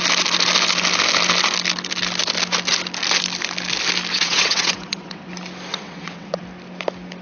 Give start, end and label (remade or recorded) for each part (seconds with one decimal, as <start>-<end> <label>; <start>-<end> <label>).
0.0-4.1 recorded; 4.1-5.3 remade; 5.3-5.7 recorded; 5.7-6.4 remade; 6.4-7.2 recorded